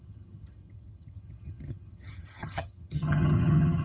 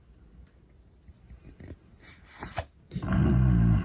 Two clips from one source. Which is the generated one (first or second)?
first